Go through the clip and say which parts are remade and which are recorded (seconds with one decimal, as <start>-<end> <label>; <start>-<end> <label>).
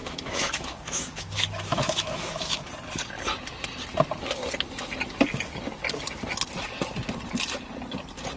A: 0.0-2.7 remade; 2.7-8.4 recorded